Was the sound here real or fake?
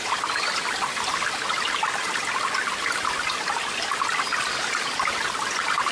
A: real